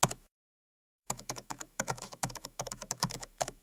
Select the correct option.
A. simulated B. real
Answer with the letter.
A